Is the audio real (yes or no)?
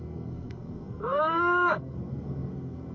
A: no